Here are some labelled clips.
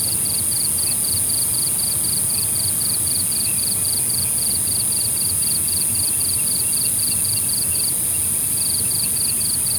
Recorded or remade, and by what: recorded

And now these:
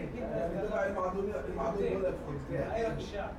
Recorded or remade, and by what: recorded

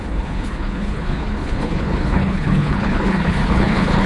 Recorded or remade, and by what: remade, codec, HILCodec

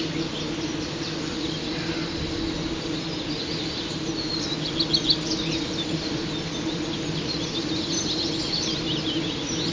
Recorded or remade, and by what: recorded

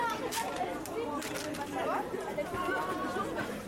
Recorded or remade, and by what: recorded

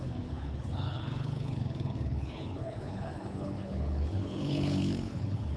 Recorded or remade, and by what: remade, codec, HILCodec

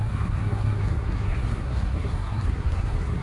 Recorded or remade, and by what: remade, codec, SNAC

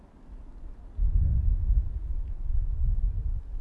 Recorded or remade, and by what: recorded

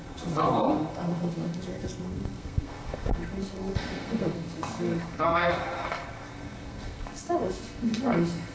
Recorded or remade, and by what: remade, codec, SNAC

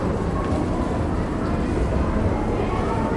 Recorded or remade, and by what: recorded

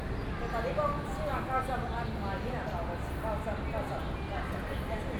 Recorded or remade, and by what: recorded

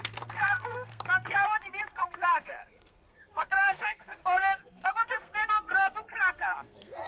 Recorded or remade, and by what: remade, codec, SNAC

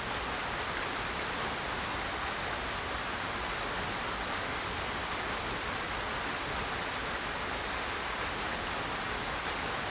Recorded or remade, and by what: recorded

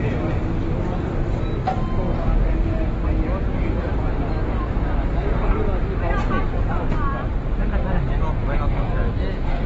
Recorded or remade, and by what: recorded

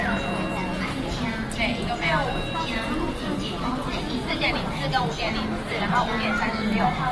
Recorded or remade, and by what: recorded